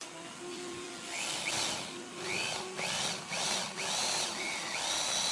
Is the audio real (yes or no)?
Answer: yes